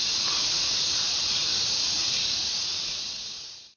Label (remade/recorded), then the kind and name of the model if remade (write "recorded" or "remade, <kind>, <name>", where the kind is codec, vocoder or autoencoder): remade, vocoder, Vocos